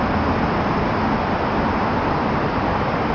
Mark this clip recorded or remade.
recorded